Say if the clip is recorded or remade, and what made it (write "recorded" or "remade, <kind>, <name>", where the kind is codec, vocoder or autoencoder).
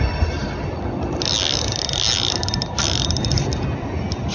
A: recorded